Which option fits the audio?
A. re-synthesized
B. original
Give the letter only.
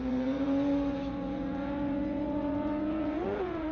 A